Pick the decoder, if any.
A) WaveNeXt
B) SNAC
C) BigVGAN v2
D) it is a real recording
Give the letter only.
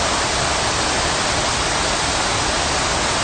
D